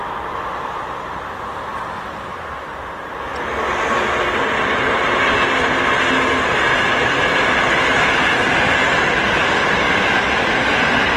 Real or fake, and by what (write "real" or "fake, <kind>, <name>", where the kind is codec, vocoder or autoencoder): real